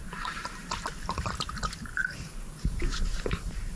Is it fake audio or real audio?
fake